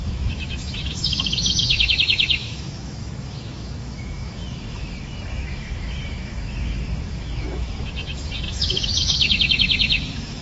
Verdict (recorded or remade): remade